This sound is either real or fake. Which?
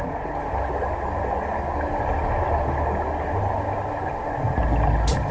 real